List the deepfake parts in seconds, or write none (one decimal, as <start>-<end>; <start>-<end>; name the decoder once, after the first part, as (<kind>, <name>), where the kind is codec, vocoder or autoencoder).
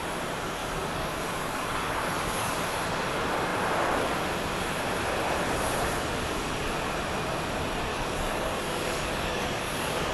0.6-2.5 (codec, DAC); 7.9-10.1